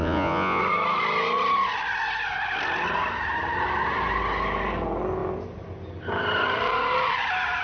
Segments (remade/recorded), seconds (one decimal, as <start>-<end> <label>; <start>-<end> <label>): 0.0-0.6 remade; 0.6-7.6 recorded

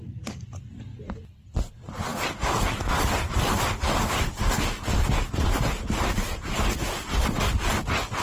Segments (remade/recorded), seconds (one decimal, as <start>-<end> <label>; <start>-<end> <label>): 0.0-8.2 recorded

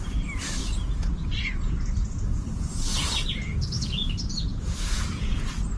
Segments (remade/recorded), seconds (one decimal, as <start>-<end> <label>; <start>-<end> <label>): 0.0-0.6 recorded; 0.6-4.1 remade; 4.1-4.5 recorded; 4.5-5.8 remade

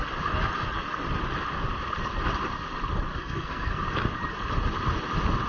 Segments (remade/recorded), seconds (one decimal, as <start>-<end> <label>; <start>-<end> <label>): 0.0-3.1 recorded; 3.1-3.8 remade; 3.8-5.5 recorded

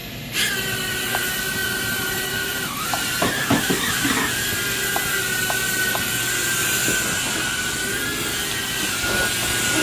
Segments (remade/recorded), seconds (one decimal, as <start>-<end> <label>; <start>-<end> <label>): 0.0-1.6 recorded; 1.6-3.6 remade; 3.6-9.8 recorded

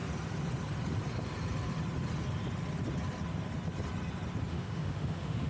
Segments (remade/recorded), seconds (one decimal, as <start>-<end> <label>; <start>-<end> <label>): 0.0-4.5 recorded; 4.5-5.5 remade